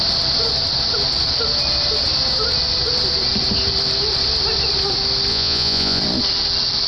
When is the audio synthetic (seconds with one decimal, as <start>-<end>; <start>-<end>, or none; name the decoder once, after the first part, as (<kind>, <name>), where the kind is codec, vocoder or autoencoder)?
5.3-6.0 (vocoder, Vocos)